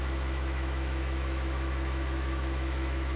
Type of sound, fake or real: fake